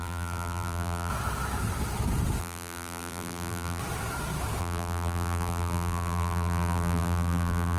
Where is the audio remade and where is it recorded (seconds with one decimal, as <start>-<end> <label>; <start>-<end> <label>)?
0.0-1.1 remade; 1.1-2.4 recorded; 2.4-3.8 remade; 3.8-4.6 recorded; 4.6-7.8 remade